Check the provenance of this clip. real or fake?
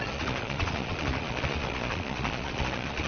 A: fake